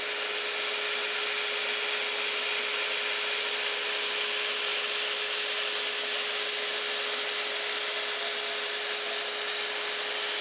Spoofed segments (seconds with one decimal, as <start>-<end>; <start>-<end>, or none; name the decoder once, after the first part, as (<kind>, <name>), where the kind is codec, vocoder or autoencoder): none